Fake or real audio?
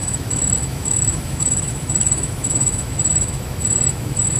fake